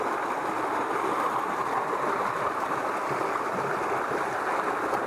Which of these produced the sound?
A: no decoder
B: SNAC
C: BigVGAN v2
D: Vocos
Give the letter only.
A